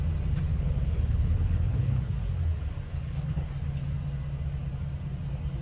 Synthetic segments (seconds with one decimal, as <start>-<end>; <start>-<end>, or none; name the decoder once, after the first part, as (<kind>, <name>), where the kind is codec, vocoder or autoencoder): 0.5-2.1 (codec, HILCodec); 2.9-3.5

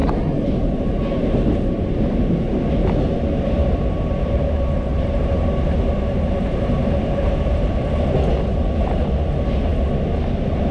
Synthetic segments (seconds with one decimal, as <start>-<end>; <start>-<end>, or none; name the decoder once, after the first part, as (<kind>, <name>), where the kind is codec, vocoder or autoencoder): 0.0-2.7 (vocoder, BigVGAN v2); 3.6-4.5; 4.9-7.7

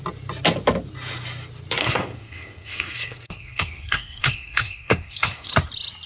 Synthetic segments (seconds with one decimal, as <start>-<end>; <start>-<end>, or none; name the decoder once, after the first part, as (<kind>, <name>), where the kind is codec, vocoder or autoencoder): 1.8-5.5 (codec, SNAC)